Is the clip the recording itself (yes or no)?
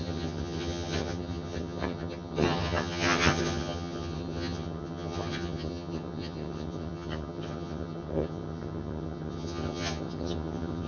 no